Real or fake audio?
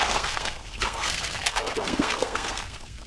fake